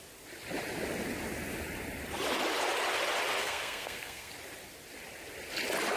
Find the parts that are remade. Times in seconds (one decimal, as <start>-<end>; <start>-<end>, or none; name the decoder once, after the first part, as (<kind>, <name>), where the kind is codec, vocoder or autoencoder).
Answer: 3.4-4.3 (codec, SNAC)